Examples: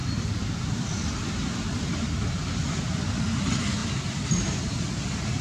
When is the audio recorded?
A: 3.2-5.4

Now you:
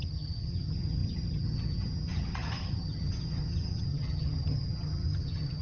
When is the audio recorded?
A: none

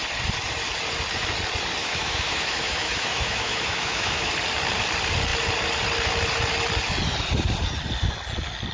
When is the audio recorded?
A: 0.0-1.8; 4.3-8.7

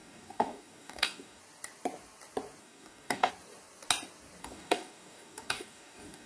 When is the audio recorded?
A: 1.4-2.6; 3.3-4.4

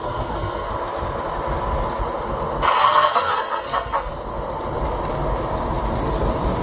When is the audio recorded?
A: 0.7-2.8; 4.1-6.6